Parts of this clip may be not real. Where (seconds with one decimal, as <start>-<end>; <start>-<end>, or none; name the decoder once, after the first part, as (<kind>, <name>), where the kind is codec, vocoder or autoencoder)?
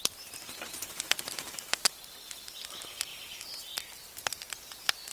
0.8-1.7 (vocoder, BigVGAN v2)